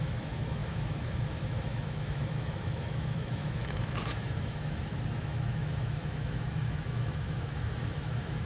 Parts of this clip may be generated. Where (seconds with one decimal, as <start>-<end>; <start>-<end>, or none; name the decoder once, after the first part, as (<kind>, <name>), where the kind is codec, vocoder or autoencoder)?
0.0-8.5 (autoencoder, DAC-VAE)